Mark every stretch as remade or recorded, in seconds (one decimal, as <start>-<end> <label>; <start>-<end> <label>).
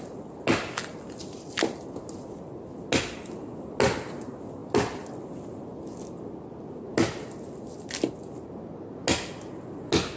0.0-10.2 recorded